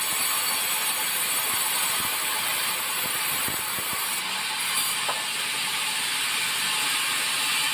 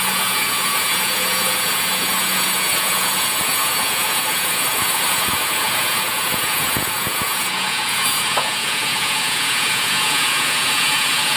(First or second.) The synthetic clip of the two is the second